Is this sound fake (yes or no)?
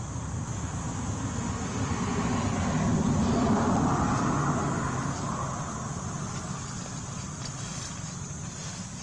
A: no